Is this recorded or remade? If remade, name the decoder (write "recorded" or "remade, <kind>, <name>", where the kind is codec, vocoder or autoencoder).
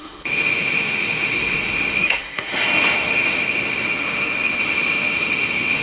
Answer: remade, autoencoder, DAC-VAE